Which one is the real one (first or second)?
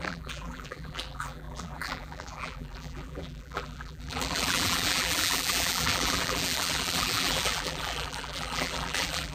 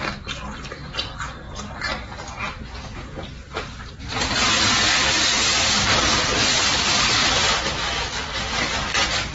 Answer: second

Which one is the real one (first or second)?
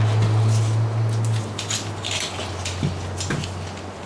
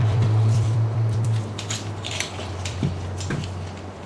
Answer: first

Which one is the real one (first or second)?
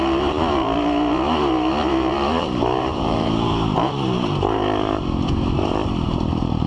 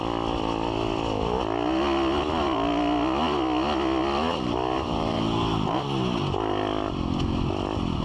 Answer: second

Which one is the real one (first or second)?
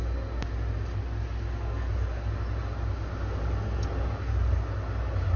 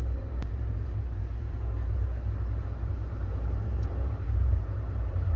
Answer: first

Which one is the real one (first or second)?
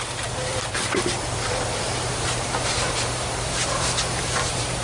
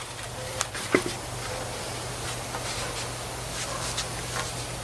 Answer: second